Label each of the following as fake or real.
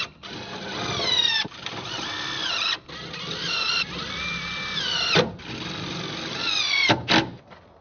real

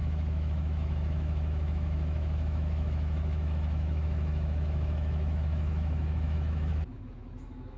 fake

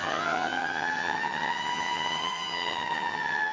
fake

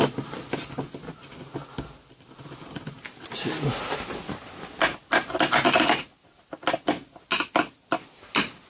real